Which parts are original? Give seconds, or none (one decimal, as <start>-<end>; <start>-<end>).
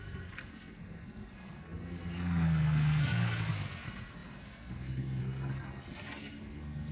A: none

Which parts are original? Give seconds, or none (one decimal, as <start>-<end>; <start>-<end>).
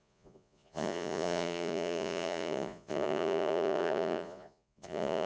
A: none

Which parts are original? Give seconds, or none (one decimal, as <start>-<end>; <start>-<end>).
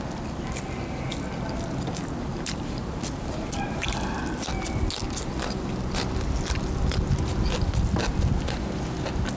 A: 0.0-2.3; 4.2-9.4